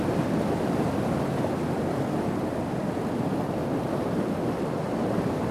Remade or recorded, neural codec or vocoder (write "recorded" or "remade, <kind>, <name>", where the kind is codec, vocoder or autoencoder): recorded